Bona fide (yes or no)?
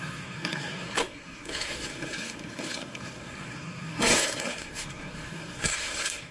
no